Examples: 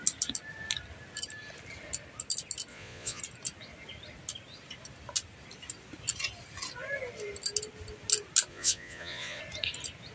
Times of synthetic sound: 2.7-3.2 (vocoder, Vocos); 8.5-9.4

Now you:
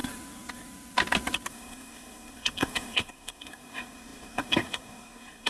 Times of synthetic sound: 1.5-5.5 (codec, SNAC)

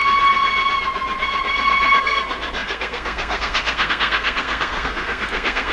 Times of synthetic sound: 2.0-5.7 (codec, SNAC)